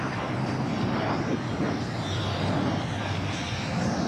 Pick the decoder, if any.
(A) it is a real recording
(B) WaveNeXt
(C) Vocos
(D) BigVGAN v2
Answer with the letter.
A